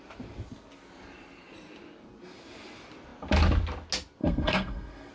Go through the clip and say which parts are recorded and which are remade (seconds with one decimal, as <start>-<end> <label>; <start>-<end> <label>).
0.0-4.2 recorded; 4.2-5.1 remade